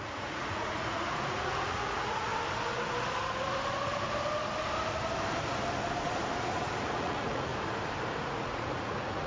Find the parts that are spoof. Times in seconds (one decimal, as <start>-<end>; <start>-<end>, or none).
0.0-2.3; 6.4-7.5; 8.2-9.3